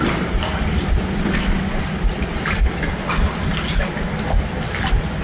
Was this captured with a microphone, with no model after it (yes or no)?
yes